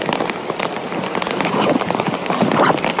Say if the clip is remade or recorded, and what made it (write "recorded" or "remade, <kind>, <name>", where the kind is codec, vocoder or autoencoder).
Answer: remade, vocoder, BigVGAN v2